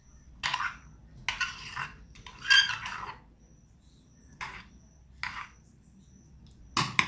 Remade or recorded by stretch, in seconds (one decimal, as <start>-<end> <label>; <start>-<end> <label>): 0.0-1.3 recorded; 1.3-2.4 remade; 2.4-4.1 recorded; 4.1-5.1 remade; 5.1-7.1 recorded